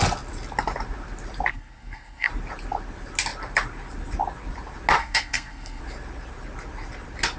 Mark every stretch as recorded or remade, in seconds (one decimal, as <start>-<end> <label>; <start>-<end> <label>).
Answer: 0.0-1.5 recorded; 1.5-2.3 remade; 2.3-5.0 recorded; 5.0-5.8 remade; 5.8-7.4 recorded